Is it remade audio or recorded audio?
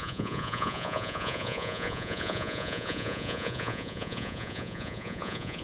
remade